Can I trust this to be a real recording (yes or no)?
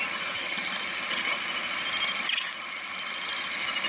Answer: yes